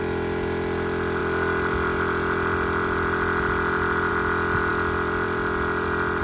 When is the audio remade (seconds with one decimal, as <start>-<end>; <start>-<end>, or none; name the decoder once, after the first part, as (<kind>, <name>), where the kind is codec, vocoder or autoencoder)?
1.2-4.1 (vocoder, BigVGAN v2); 4.7-6.2